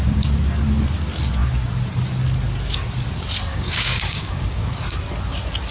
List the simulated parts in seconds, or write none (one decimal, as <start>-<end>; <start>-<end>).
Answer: 3.5-4.7